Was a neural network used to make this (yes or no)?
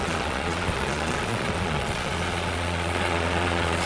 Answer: yes